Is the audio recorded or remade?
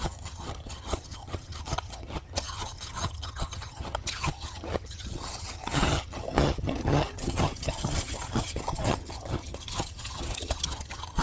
remade